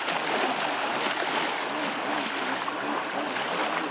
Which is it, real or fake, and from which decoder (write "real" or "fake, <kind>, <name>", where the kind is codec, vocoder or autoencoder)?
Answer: real